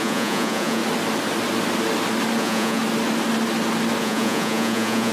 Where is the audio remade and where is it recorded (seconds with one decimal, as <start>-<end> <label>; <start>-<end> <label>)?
0.0-0.8 remade; 0.8-2.4 recorded; 2.4-2.8 remade; 2.8-4.0 recorded; 4.0-5.1 remade